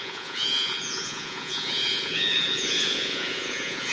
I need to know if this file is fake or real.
fake